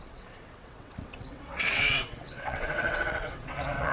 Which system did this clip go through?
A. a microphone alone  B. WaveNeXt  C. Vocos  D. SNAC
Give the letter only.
B